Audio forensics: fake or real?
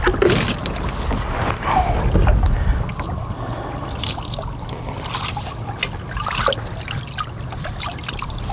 real